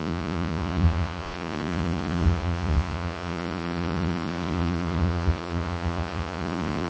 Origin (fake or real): fake